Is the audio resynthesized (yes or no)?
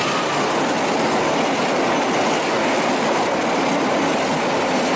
no